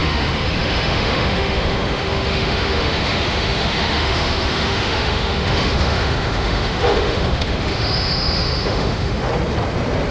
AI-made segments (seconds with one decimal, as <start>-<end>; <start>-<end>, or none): 0.0-9.3